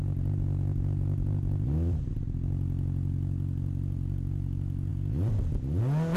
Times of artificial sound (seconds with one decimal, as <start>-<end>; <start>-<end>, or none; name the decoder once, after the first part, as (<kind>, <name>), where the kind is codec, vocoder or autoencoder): none

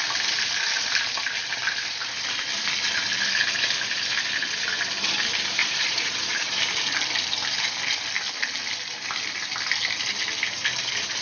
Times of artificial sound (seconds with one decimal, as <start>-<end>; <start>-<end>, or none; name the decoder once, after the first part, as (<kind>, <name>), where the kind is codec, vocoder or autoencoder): 5.6-6.6 (vocoder, Vocos)

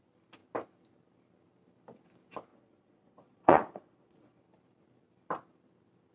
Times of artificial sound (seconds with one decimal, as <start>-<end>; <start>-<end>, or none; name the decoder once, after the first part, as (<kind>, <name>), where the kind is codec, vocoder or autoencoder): 2.5-4.4 (vocoder, Vocos)

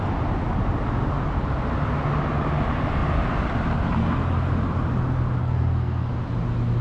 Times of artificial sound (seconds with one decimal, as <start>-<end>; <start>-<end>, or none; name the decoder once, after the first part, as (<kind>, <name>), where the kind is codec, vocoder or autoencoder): 5.4-6.1 (codec, SNAC)

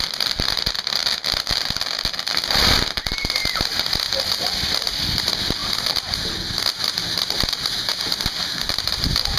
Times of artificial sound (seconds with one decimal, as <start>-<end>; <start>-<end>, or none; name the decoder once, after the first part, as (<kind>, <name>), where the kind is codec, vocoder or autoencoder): 0.0-1.0 (vocoder, BigVGAN v2); 2.5-3.4; 4.5-5.6; 7.2-9.4

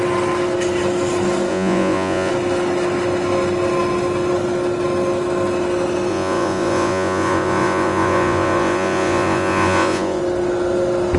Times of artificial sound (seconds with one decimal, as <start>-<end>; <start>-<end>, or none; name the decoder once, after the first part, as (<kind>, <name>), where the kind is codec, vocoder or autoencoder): 1.5-2.3 (vocoder, Vocos); 6.1-10.2

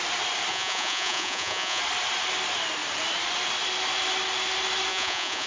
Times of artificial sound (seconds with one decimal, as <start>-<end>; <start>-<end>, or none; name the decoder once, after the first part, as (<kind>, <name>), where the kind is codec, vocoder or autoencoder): 0.5-1.8 (vocoder, Vocos); 4.9-5.5